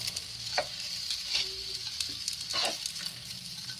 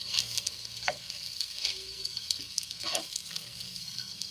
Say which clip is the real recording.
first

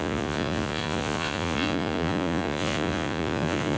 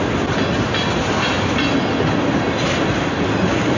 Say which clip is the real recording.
second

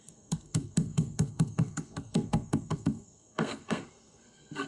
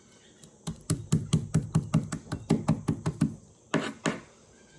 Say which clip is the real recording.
second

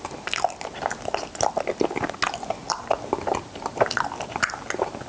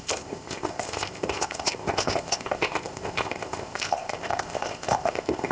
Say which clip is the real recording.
first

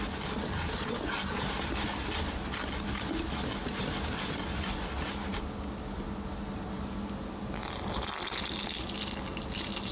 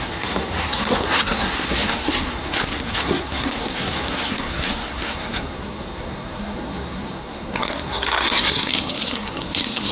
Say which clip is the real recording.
first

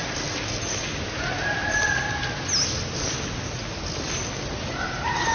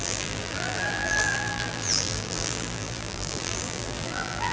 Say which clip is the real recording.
first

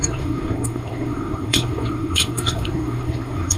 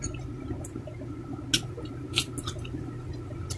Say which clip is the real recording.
second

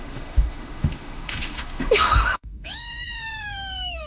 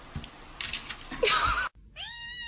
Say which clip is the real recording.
second